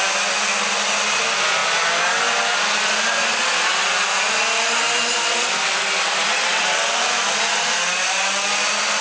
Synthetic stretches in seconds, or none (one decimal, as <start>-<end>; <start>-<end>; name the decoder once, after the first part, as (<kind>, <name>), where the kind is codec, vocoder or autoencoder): none